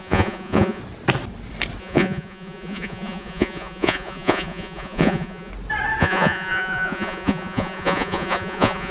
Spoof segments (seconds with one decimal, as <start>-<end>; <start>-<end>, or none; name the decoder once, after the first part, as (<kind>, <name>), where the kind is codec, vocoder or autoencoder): 0.0-0.8 (vocoder, Vocos); 1.8-5.5; 6.0-8.9